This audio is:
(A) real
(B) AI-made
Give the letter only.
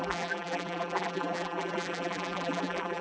B